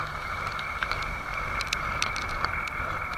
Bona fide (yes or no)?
yes